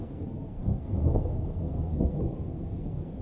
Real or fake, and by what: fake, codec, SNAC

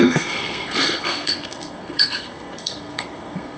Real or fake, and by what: fake, codec, SNAC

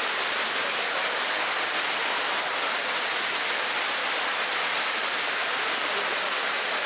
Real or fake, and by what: real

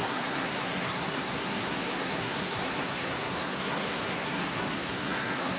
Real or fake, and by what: fake, codec, SNAC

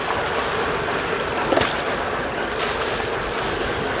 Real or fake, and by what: real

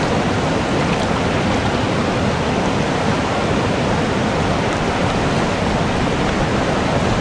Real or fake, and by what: real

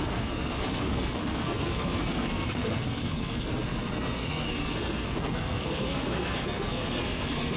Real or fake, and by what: fake, codec, SNAC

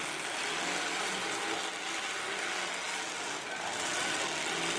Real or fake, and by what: real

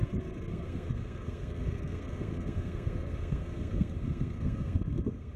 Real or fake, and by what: fake, codec, SNAC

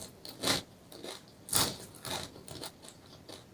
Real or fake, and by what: real